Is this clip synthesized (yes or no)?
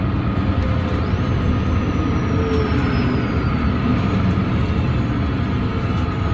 no